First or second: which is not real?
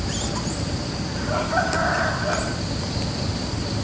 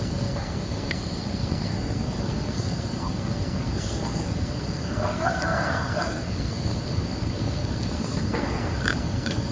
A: second